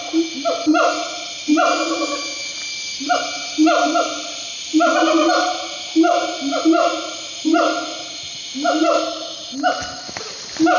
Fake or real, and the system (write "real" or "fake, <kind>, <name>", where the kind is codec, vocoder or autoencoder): real